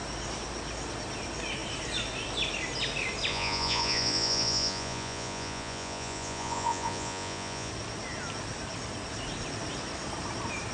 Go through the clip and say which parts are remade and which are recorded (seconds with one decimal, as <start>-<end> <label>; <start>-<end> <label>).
0.0-3.3 recorded; 3.3-7.7 remade; 7.7-10.7 recorded